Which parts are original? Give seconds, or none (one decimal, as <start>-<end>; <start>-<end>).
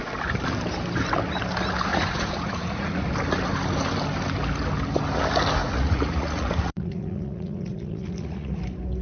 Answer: 0.0-1.9; 3.1-5.6; 8.6-9.0